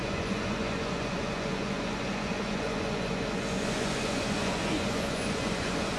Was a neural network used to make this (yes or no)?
yes